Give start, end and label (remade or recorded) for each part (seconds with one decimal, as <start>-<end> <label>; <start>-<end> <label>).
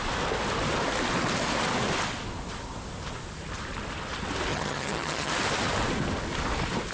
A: 0.0-4.5 recorded; 4.5-5.3 remade; 5.3-6.9 recorded